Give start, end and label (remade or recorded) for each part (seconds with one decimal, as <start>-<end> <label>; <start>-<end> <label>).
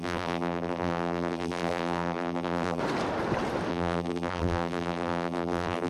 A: 0.0-2.8 remade; 2.8-3.7 recorded; 3.7-5.9 remade